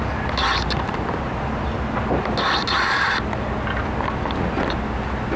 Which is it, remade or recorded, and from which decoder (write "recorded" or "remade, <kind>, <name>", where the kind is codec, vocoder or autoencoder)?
recorded